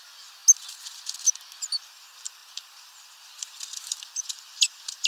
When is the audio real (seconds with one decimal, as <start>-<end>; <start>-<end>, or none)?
0.4-1.7